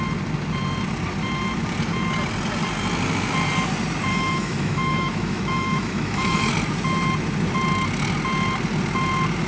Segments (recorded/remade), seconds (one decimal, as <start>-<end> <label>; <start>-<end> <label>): 0.0-4.1 recorded; 4.1-6.5 remade; 6.5-9.5 recorded